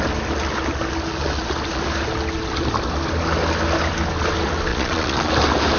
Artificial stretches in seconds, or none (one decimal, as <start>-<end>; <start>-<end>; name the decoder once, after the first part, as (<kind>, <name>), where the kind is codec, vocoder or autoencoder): 4.7-5.3 (vocoder, Vocos)